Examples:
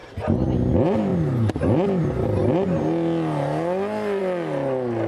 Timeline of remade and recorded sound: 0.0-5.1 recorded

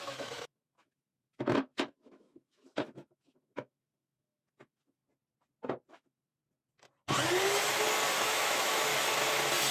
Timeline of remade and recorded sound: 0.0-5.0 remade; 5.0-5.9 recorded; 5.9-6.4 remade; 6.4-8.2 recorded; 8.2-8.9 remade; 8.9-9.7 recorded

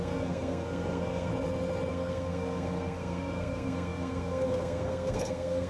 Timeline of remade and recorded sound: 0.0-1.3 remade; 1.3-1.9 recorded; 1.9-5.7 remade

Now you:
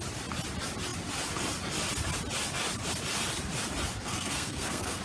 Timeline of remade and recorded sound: 0.0-3.9 recorded; 3.9-5.0 remade